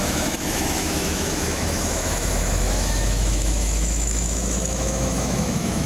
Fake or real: fake